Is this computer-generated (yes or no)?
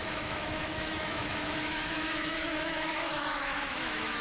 yes